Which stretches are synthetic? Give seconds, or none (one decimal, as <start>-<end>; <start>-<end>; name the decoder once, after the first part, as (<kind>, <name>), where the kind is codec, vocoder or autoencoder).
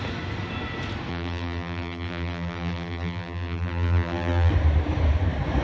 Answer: 1.1-4.5 (vocoder, BigVGAN v2)